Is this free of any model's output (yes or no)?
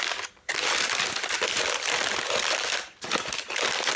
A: yes